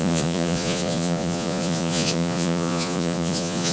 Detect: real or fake fake